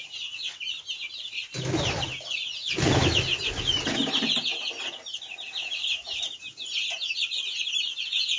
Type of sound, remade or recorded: recorded